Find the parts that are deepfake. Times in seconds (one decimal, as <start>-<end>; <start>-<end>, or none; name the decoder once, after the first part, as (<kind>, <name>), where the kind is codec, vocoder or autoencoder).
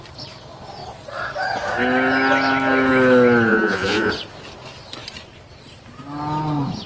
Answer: 3.5-4.1 (vocoder, Vocos)